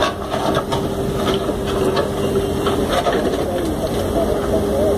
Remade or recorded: recorded